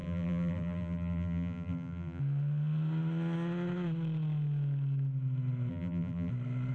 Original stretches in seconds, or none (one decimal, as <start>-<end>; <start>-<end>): 2.2-5.7; 6.3-6.7